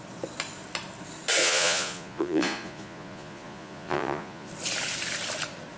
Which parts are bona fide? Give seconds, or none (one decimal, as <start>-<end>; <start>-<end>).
0.0-1.4; 4.5-5.8